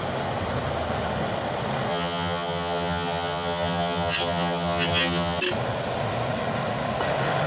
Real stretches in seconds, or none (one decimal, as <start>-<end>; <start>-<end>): 0.0-1.9; 5.4-7.5